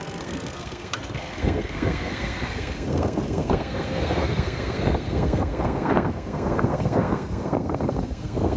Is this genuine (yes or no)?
no